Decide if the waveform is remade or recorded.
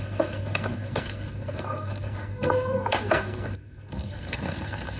remade